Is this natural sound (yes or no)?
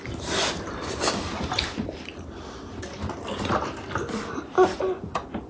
yes